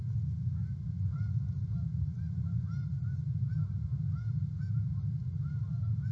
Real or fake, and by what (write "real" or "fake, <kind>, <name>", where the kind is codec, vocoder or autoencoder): real